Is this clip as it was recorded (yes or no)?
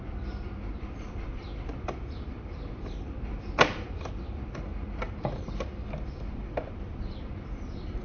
no